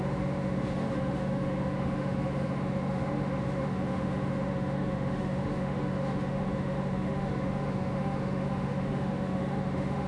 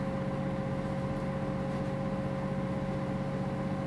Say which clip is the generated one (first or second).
first